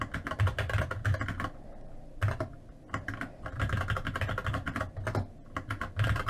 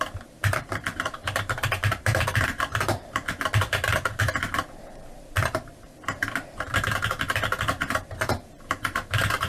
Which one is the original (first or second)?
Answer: first